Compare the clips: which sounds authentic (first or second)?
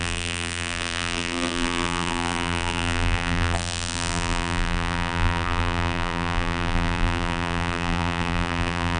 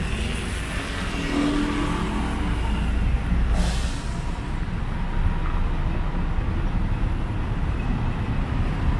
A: second